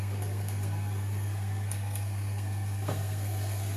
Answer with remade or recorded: remade